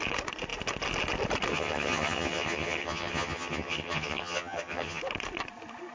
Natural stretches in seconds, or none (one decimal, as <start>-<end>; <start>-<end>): 0.0-1.5; 5.0-5.9